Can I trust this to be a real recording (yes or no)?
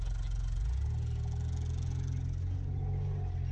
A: yes